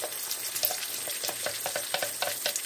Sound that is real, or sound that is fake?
real